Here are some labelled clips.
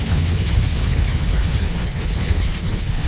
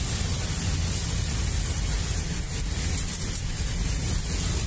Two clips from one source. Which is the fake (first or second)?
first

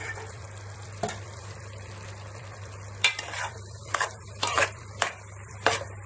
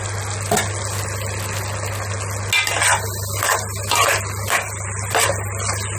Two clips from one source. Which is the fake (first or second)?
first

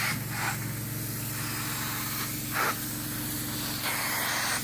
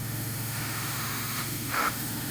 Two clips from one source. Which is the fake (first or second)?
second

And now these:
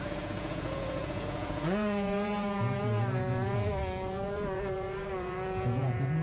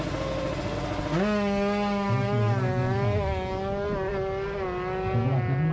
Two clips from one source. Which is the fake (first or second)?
first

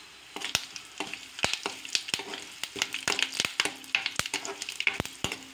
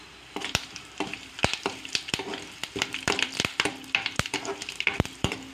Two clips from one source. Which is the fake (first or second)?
second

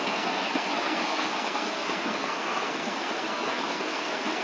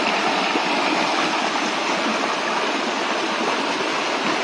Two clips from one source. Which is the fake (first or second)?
first